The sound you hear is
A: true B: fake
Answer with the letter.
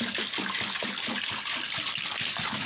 A